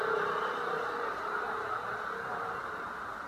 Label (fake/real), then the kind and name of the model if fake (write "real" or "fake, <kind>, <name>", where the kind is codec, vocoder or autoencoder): real